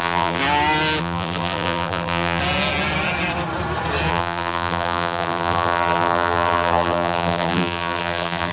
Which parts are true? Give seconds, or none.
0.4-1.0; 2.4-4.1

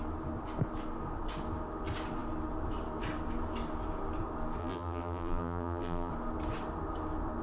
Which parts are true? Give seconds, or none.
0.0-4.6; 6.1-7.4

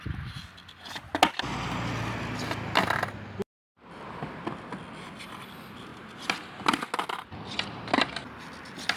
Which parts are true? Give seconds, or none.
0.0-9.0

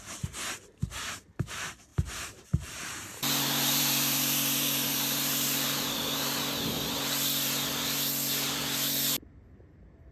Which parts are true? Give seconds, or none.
0.0-0.8; 1.5-1.9; 6.4-10.1

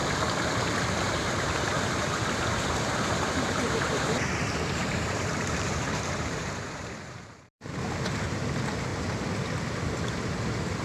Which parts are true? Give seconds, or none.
0.0-1.0; 8.9-10.0

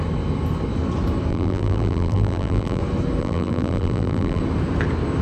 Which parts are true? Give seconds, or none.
0.0-1.3; 2.8-3.2; 4.4-5.2

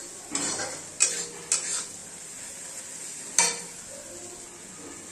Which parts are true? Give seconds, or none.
0.0-5.1

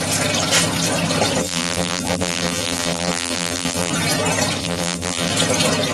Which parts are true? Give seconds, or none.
0.0-1.4; 3.9-4.6; 5.3-5.9